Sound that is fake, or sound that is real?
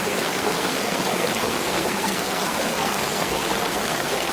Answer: fake